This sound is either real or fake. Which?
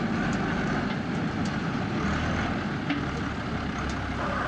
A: real